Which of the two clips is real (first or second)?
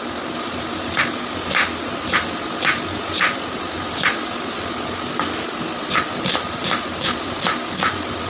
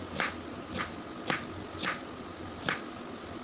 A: second